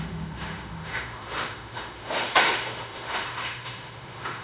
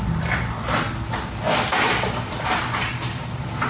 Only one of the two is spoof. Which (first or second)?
first